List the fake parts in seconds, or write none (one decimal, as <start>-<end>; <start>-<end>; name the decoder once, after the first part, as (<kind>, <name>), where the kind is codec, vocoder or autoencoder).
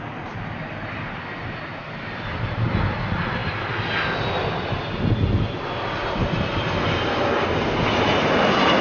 none